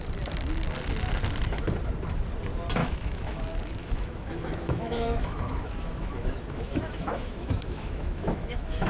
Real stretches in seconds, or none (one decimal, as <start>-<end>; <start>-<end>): 0.0-2.8; 3.4-3.8